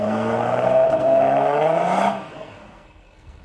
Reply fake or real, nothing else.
fake